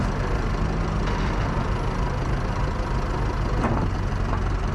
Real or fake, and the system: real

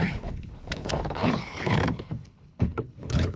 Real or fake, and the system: fake, codec, HILCodec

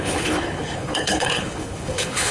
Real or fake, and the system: fake, codec, HILCodec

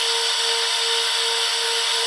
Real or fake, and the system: real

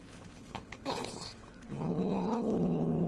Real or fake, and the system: fake, codec, HILCodec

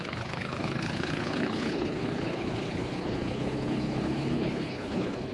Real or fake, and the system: fake, codec, HILCodec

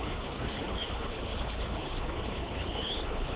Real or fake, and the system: fake, codec, HILCodec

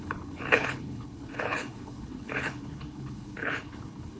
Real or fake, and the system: fake, codec, HILCodec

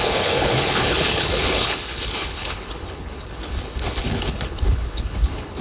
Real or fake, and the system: fake, codec, HILCodec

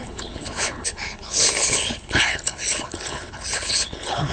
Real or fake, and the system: fake, codec, HILCodec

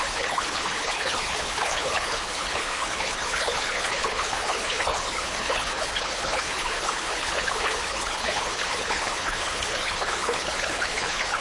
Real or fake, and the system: fake, codec, HILCodec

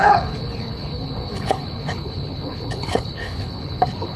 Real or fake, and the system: fake, codec, HILCodec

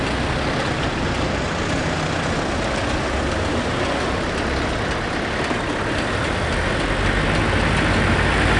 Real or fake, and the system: real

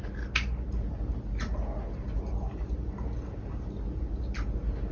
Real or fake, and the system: real